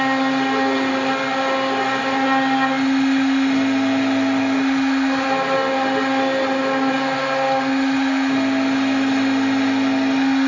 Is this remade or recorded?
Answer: recorded